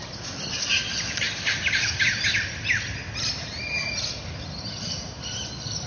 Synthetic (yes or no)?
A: no